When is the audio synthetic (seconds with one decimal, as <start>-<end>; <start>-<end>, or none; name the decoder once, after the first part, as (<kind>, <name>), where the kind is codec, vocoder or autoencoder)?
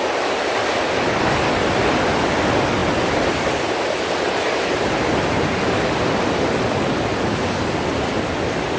none